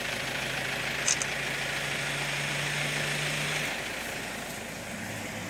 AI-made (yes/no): no